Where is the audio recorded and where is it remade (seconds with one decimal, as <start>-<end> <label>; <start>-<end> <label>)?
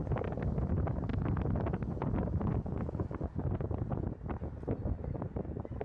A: 0.0-5.8 recorded